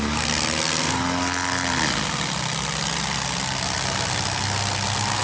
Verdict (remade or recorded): recorded